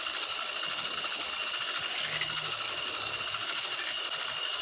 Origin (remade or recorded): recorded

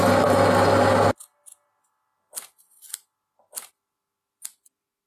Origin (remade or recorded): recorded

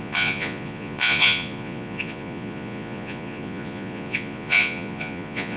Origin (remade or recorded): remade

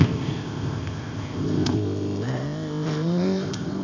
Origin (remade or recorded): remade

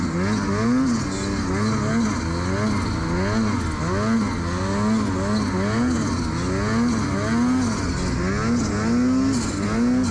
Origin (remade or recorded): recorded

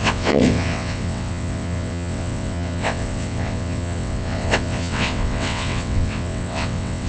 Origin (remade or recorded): remade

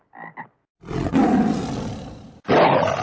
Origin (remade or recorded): recorded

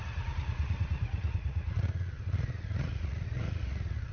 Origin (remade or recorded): remade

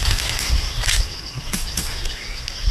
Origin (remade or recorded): remade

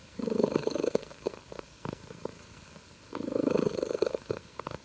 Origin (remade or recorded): remade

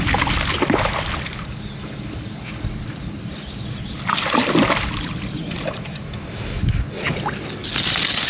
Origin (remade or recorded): recorded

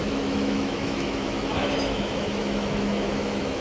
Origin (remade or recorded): remade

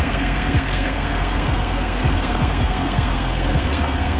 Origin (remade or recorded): remade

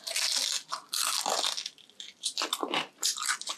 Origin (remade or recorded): recorded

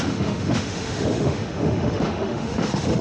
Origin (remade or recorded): remade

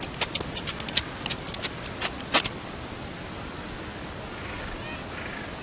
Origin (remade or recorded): recorded